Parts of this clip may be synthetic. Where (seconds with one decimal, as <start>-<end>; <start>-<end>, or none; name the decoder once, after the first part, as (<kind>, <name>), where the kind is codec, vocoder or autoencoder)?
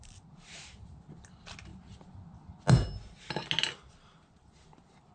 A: none